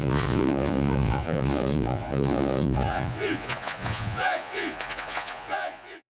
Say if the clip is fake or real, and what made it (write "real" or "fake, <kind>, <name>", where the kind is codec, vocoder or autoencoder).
fake, vocoder, Vocos